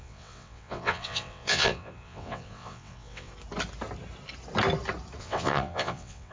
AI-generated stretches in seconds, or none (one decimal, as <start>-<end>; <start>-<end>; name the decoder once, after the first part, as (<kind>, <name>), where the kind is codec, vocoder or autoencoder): 0.0-3.3 (vocoder, WaveNeXt); 5.2-6.3